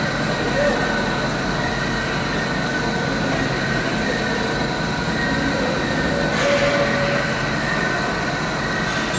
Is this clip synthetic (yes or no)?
no